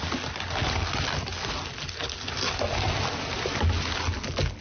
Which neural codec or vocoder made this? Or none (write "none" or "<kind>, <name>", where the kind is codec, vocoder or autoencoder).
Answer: none